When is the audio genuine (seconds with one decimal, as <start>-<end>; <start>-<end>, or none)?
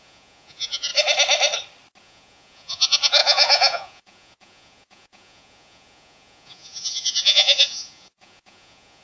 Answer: 0.9-2.0